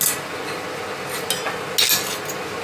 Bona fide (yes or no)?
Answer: yes